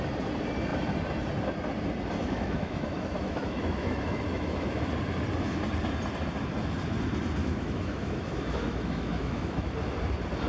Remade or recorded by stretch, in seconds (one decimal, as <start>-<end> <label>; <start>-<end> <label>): 0.0-2.2 recorded; 2.2-4.9 remade; 4.9-7.4 recorded; 7.4-9.7 remade; 9.7-10.5 recorded